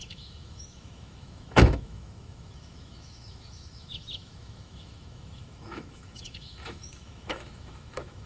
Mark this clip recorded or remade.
remade